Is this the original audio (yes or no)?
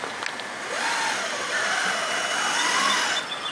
yes